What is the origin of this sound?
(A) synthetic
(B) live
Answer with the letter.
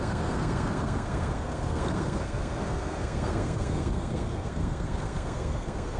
A